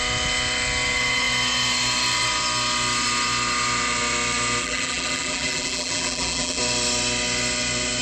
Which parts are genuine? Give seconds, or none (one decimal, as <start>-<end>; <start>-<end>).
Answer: 0.0-4.6; 6.6-8.0